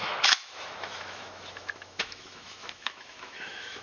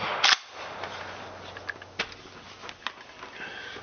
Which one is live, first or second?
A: second